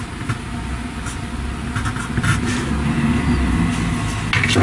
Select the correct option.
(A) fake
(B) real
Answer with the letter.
B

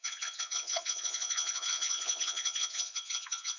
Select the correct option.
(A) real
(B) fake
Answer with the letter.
B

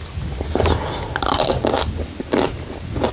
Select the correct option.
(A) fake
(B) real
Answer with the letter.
B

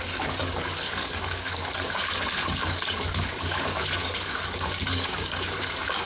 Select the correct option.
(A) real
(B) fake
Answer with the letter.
B